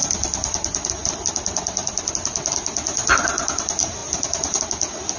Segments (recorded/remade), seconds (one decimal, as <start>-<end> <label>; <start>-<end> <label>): 0.0-5.2 recorded